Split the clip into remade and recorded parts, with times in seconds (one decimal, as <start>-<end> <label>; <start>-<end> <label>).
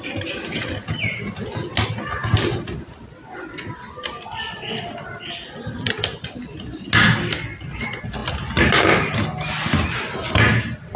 0.0-11.0 recorded